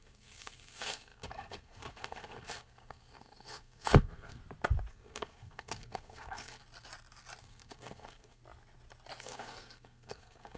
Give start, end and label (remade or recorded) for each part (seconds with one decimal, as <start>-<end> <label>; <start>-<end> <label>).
0.0-4.4 remade; 4.4-4.9 recorded; 4.9-6.6 remade; 6.6-7.4 recorded; 7.4-8.4 remade; 8.4-9.2 recorded; 9.2-10.6 remade

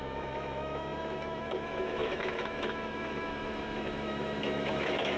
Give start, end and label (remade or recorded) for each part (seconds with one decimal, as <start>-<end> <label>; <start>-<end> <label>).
0.0-5.2 remade